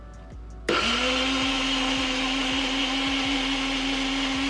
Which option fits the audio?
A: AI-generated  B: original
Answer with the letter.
B